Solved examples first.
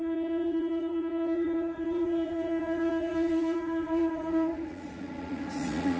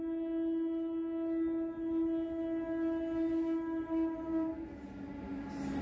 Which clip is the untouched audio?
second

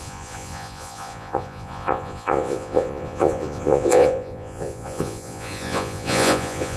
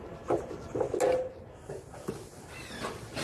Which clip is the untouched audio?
second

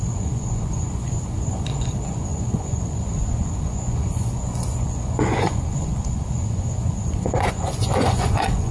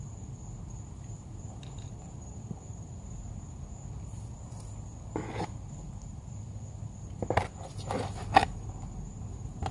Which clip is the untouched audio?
second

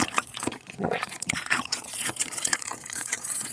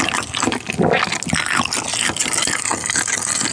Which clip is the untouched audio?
second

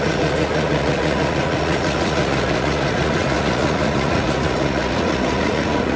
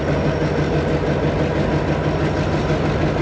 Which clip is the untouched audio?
second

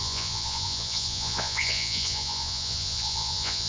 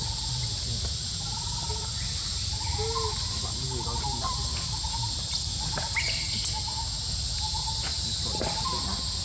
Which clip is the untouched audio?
second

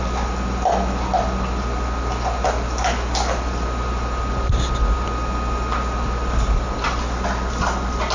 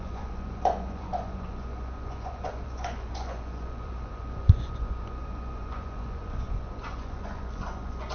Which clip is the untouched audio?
first